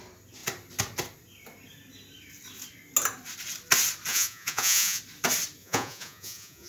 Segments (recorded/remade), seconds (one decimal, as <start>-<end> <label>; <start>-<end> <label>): 0.0-4.1 recorded; 4.1-5.0 remade; 5.0-5.6 recorded; 5.6-6.7 remade